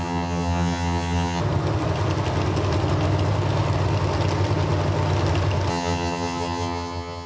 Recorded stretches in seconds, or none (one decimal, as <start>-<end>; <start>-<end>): 1.4-5.7